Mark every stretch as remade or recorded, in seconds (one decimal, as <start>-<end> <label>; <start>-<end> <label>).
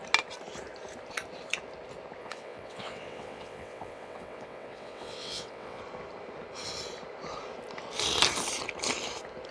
0.0-2.2 recorded; 2.2-5.8 remade; 5.8-9.5 recorded